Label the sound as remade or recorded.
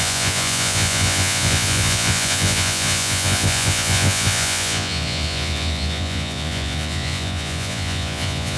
remade